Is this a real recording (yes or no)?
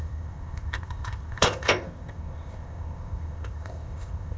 no